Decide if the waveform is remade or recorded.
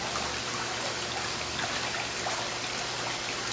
recorded